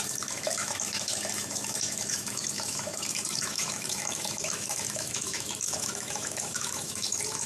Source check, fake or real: fake